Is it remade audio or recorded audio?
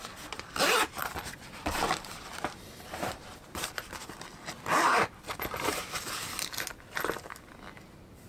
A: remade